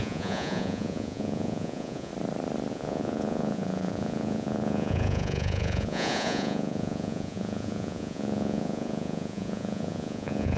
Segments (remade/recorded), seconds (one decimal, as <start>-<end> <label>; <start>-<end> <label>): 0.0-2.1 remade; 2.1-2.7 recorded; 2.7-10.6 remade